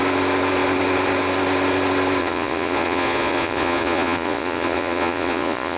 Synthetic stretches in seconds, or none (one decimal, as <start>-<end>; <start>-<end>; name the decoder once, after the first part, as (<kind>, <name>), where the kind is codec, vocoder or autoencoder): 2.2-5.8 (vocoder, Vocos)